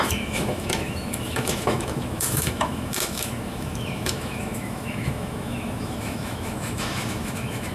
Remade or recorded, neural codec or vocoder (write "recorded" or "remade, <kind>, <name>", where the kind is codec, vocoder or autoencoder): remade, autoencoder, DAC-VAE